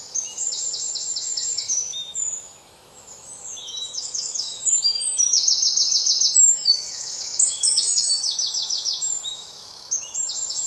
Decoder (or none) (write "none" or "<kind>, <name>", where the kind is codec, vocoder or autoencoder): autoencoder, DAC-VAE